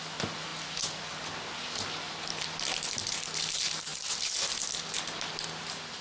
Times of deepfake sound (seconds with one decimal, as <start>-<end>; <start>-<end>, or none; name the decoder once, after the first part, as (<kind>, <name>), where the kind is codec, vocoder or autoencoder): none